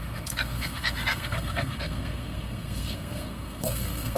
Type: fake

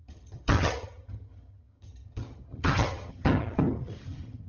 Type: fake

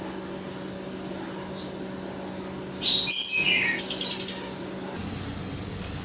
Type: real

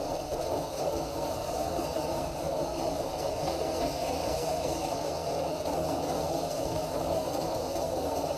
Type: fake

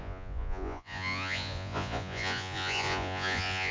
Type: fake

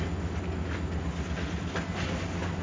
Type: real